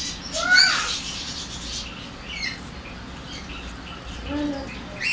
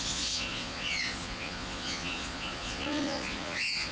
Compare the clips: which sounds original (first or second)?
first